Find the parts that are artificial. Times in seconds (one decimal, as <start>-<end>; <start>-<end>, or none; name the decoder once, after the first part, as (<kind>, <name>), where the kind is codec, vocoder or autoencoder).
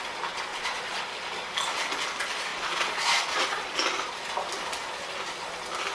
0.5-1.0 (vocoder, Vocos); 2.5-3.7